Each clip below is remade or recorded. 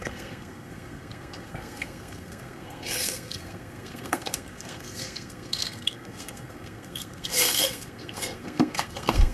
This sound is remade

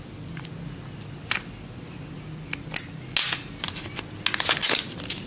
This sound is recorded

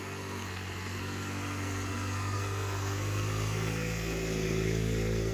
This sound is remade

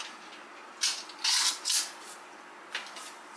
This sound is recorded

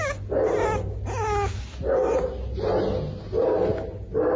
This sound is recorded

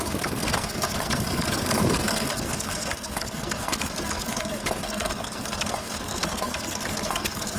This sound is remade